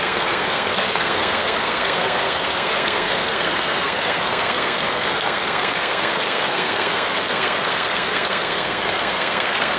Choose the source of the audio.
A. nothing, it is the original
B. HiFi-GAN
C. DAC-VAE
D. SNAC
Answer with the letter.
D